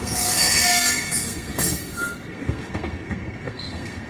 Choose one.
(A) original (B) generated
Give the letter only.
B